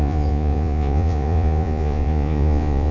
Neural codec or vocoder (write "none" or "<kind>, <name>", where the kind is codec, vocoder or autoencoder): vocoder, Vocos